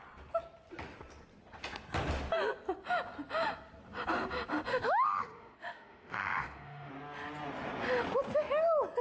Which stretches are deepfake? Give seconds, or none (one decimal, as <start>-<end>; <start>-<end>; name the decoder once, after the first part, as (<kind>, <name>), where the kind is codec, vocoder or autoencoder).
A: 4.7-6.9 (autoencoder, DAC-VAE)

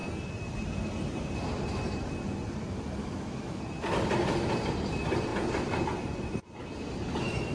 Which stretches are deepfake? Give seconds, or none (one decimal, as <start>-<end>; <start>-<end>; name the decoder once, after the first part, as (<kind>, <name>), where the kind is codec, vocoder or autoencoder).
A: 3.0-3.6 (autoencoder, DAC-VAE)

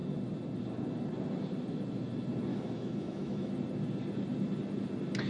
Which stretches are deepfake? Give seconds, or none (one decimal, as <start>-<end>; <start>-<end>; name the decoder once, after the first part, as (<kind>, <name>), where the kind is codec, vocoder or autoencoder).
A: 2.5-3.5 (autoencoder, DAC-VAE)

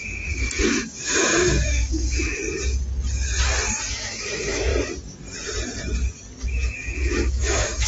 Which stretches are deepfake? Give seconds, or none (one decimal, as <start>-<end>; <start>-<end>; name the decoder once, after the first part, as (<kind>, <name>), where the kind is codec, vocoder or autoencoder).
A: 0.0-2.4 (autoencoder, DAC-VAE); 3.9-4.7; 6.4-7.9

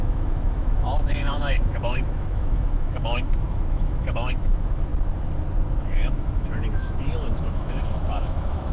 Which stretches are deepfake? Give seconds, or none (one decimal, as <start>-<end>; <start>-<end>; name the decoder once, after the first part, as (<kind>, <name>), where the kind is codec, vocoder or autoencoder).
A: 0.0-4.9 (autoencoder, DAC-VAE); 5.8-8.7